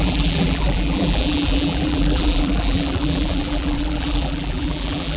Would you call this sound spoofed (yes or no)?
yes